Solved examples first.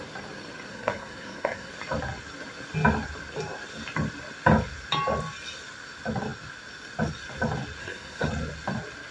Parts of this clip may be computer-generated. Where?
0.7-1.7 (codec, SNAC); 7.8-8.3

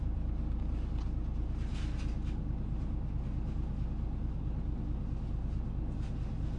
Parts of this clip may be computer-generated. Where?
none

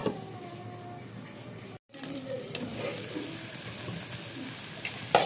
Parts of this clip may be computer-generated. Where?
none

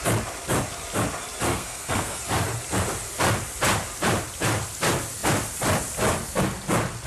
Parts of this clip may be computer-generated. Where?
1.5-2.2 (codec, SNAC)

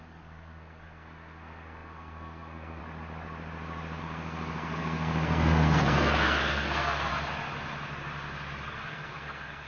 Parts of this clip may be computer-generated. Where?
0.0-2.8 (codec, SNAC); 4.0-7.1; 8.7-9.7